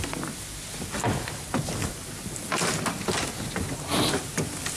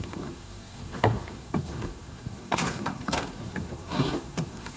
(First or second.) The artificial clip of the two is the second